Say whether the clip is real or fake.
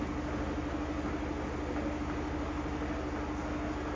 real